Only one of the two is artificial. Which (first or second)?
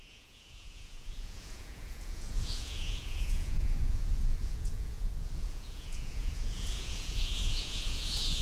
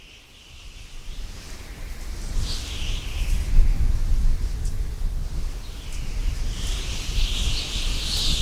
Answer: first